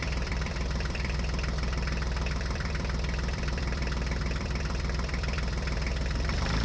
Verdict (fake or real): fake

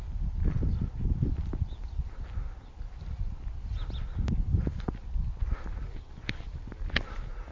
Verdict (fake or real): real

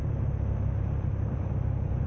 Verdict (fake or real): fake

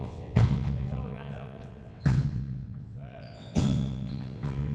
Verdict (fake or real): fake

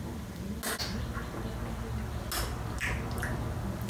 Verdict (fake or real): real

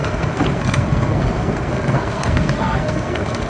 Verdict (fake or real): fake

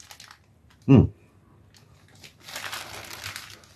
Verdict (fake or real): real